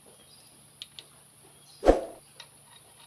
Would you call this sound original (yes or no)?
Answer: yes